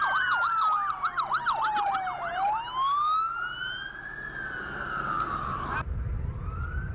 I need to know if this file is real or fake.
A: real